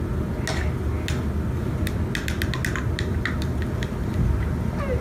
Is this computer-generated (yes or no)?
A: no